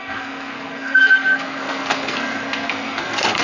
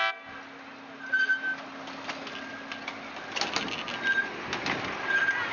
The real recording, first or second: second